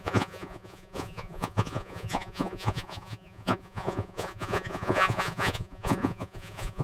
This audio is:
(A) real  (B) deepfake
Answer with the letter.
B